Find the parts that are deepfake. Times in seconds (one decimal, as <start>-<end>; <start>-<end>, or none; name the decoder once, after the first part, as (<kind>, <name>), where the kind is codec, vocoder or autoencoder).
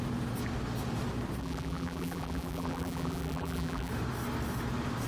1.4-3.9 (vocoder, BigVGAN v2)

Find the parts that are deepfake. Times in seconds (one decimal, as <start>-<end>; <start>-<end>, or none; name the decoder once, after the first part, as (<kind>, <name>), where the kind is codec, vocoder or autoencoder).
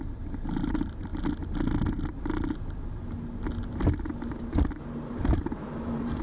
0.0-1.1 (vocoder, BigVGAN v2); 4.8-6.2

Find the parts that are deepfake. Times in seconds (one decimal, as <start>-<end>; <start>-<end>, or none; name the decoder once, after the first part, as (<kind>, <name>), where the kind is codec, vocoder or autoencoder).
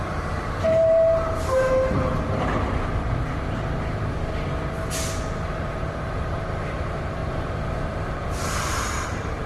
0.0-2.1 (vocoder, BigVGAN v2); 5.6-7.2; 8.0-9.5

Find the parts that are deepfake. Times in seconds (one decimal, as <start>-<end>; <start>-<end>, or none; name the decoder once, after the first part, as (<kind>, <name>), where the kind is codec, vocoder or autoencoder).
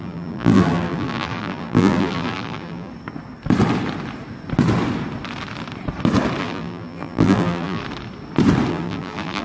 0.0-2.9 (vocoder, BigVGAN v2); 6.4-7.8; 8.7-9.4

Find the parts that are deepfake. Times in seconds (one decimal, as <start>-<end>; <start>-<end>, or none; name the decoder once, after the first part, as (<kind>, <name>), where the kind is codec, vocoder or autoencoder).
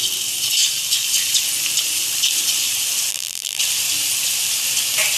3.1-3.6 (vocoder, BigVGAN v2)